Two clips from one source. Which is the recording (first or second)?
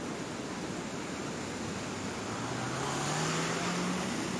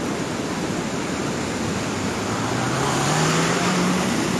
first